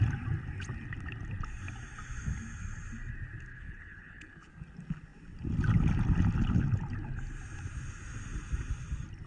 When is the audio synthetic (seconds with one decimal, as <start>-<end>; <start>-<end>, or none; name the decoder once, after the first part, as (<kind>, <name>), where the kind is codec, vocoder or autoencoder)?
3.5-4.5 (codec, HILCodec)